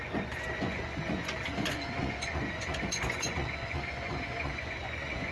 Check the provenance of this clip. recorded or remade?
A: remade